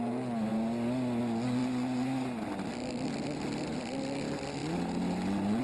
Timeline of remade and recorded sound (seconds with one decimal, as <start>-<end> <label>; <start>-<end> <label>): 0.0-5.6 recorded